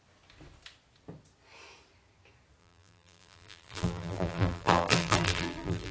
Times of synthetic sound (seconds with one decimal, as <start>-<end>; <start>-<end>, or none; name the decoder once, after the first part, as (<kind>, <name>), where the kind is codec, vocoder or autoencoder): 2.6-5.9 (vocoder, BigVGAN v2)